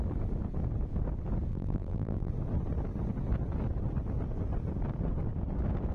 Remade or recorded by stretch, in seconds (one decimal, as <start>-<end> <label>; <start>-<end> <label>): 0.0-1.5 recorded; 1.5-2.3 remade; 2.3-5.9 recorded